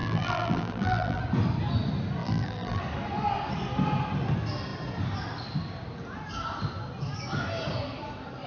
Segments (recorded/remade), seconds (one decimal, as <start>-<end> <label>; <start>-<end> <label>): 0.0-1.2 remade; 1.2-2.2 recorded; 2.2-2.8 remade; 2.8-8.5 recorded